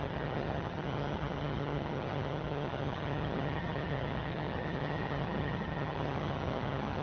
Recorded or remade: remade